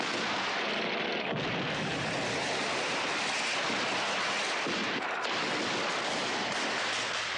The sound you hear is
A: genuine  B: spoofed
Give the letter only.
A